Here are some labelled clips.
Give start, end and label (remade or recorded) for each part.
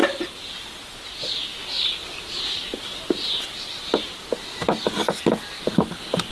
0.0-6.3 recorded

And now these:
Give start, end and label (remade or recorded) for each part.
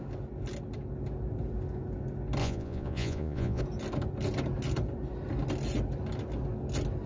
0.0-2.4 recorded; 2.4-3.6 remade; 3.6-7.1 recorded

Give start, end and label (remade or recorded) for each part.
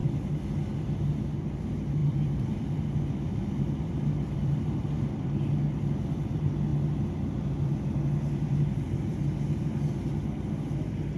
0.0-2.0 recorded; 2.0-5.5 remade; 5.5-6.7 recorded; 6.7-7.7 remade; 7.7-11.2 recorded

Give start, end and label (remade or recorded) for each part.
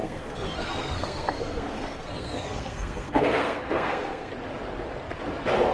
0.0-4.3 remade; 4.3-5.7 recorded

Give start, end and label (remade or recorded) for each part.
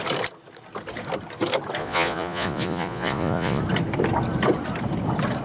0.0-1.8 recorded; 1.8-3.6 remade; 3.6-5.4 recorded